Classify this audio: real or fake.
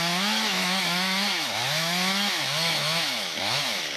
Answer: fake